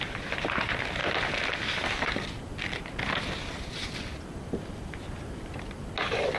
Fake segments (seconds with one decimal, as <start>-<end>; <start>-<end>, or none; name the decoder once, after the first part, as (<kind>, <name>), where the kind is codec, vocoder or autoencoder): none